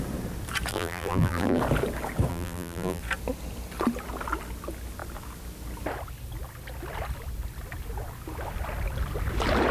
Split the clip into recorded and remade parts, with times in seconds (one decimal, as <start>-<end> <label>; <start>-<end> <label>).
0.0-0.7 recorded; 0.7-1.6 remade; 1.6-2.3 recorded; 2.3-3.0 remade; 3.0-9.7 recorded